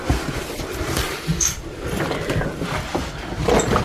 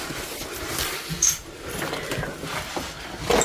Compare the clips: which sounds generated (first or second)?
first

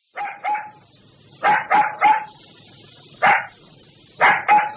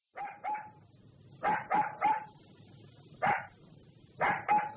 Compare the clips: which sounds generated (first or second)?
second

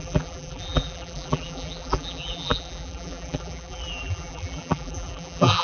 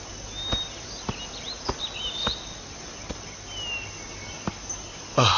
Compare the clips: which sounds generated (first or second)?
first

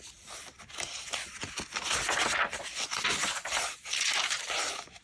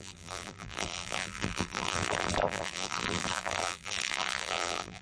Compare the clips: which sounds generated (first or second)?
second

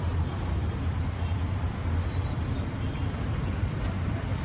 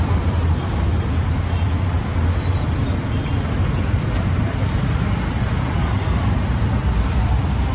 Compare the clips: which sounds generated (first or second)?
first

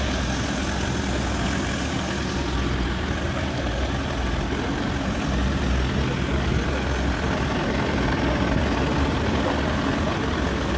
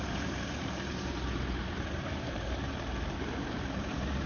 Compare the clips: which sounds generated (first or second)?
second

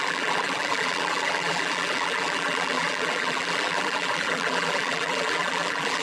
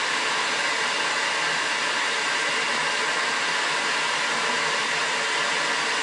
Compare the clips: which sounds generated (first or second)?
first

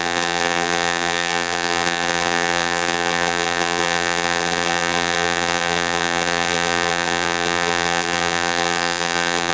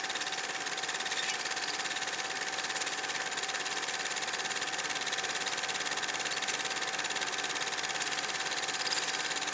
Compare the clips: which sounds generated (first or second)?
first